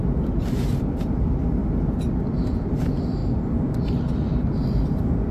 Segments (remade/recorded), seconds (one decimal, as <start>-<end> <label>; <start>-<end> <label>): 0.0-1.0 recorded; 1.0-1.6 remade; 1.6-2.2 recorded; 2.2-3.2 remade; 3.2-5.3 recorded